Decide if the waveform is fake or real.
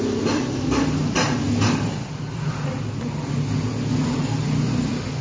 real